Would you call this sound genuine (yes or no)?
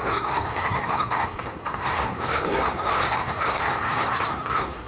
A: no